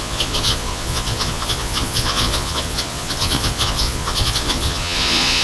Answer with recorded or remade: remade